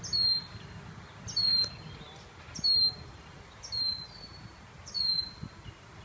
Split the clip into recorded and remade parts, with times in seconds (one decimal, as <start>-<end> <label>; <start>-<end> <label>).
0.0-6.0 recorded